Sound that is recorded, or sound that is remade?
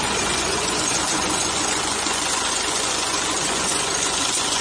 remade